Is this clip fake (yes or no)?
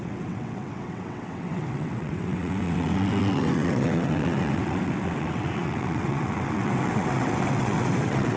yes